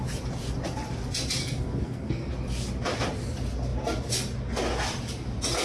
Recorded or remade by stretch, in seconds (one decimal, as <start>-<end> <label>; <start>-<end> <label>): 0.0-1.4 recorded; 1.4-2.3 remade; 2.3-5.6 recorded